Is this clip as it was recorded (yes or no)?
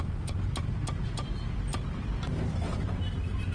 yes